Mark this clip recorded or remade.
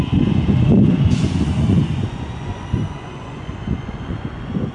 remade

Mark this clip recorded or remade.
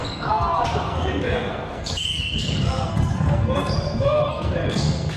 remade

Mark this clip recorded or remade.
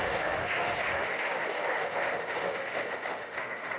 remade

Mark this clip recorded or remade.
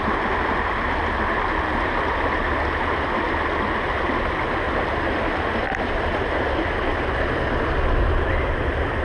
recorded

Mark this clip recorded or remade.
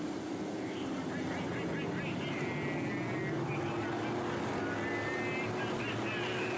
recorded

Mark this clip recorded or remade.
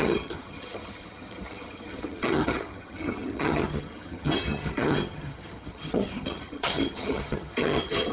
remade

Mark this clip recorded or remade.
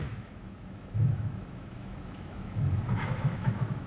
remade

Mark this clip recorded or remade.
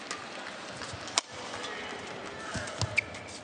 recorded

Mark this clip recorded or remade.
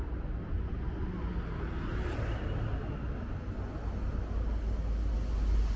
recorded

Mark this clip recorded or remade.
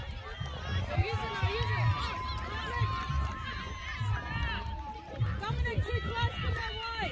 recorded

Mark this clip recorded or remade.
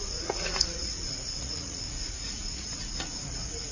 remade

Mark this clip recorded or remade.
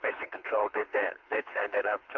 remade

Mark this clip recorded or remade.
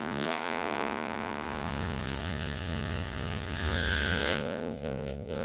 remade